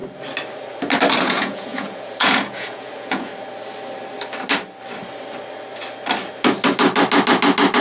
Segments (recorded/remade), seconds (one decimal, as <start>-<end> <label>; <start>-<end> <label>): 0.0-1.2 recorded; 1.2-3.3 remade; 3.3-7.8 recorded